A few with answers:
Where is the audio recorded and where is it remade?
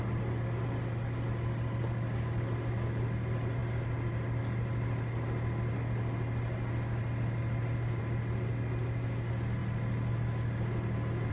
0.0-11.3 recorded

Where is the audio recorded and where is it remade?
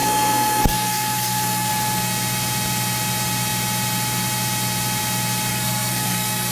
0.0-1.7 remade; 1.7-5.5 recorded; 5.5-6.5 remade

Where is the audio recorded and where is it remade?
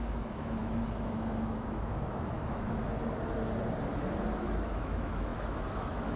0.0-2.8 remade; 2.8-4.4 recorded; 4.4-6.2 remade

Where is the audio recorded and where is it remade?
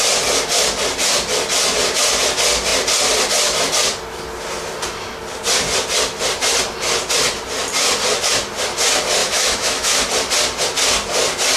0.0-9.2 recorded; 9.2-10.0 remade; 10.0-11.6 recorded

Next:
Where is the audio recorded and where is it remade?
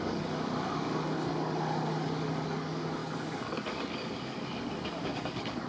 0.0-5.7 remade